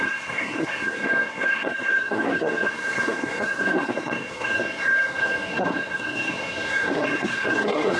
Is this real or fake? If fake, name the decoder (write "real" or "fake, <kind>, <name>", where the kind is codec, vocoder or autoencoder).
fake, codec, SNAC